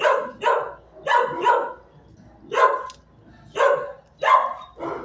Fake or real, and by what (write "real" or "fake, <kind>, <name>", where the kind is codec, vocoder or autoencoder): real